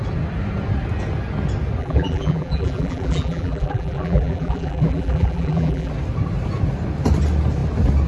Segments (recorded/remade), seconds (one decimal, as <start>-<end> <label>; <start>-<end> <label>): 0.0-1.8 recorded; 1.8-5.9 remade; 5.9-8.1 recorded